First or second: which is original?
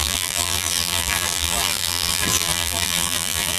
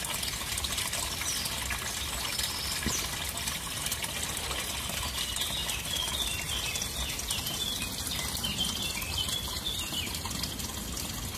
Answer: second